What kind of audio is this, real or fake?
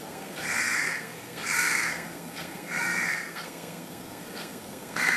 fake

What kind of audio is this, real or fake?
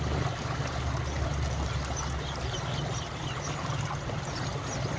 real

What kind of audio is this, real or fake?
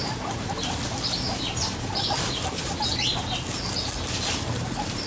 fake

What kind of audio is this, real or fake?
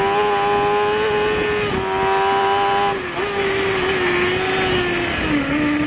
real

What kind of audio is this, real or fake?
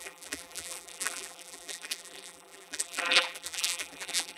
fake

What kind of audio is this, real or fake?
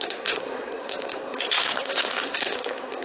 fake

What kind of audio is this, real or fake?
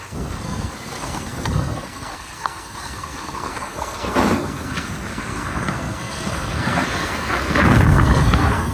fake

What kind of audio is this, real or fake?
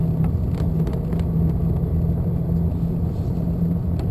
real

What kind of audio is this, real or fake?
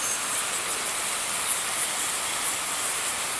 real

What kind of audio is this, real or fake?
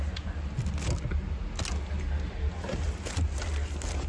real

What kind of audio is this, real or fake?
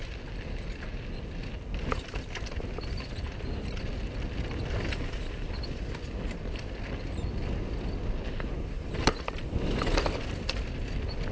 real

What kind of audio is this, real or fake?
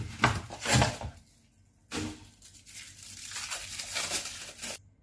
real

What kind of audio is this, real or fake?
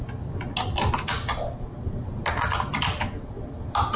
real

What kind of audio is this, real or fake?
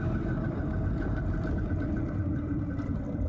fake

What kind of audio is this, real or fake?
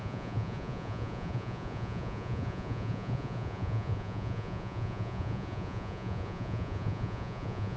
fake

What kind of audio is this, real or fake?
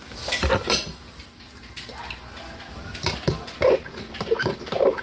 real